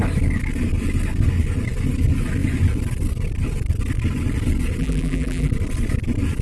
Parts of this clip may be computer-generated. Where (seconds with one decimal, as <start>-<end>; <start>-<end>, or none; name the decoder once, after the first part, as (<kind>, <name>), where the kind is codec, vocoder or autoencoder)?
4.8-5.5 (vocoder, BigVGAN v2)